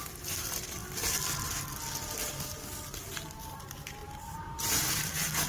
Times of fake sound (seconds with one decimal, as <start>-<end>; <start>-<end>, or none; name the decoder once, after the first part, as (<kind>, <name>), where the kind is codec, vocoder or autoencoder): 0.0-0.8 (vocoder, BigVGAN v2); 3.5-5.5